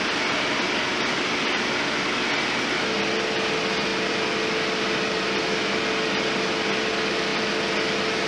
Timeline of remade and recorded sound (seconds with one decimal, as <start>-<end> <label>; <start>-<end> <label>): 0.0-8.3 recorded